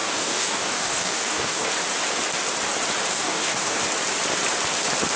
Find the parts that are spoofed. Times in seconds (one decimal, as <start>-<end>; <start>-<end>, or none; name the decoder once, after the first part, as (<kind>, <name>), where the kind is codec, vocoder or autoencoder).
0.0-1.7 (codec, DAC); 3.1-3.8